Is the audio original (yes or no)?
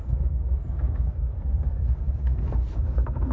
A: no